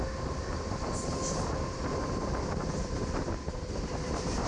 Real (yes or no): yes